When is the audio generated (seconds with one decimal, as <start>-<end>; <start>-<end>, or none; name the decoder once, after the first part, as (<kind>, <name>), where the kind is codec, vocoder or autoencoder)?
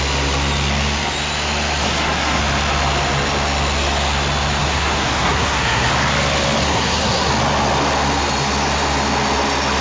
1.8-2.4 (codec, SNAC); 4.6-5.9; 6.6-7.3